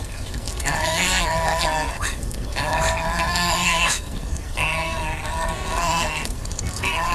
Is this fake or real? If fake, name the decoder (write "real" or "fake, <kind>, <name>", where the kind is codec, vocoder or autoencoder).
fake, codec, SNAC